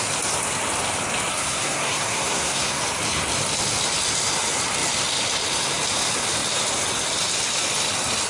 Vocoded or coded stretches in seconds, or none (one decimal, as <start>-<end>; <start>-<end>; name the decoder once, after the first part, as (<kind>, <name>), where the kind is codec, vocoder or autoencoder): 1.3-2.8 (codec, SNAC)